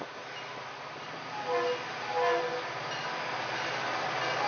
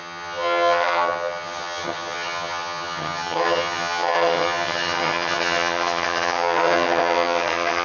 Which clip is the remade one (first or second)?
second